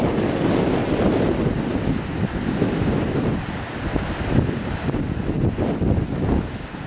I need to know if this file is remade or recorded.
recorded